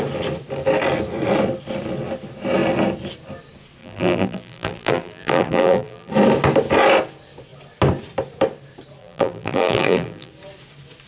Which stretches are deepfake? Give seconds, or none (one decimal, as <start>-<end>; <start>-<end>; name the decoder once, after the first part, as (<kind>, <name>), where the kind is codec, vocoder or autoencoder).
3.8-6.1 (vocoder, BigVGAN v2); 9.0-10.3